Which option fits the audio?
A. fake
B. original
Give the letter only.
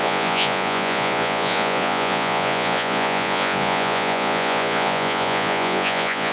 A